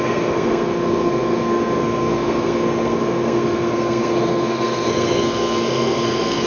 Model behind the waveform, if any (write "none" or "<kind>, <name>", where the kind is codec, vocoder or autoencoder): codec, SNAC